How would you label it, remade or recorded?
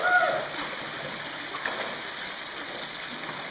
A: recorded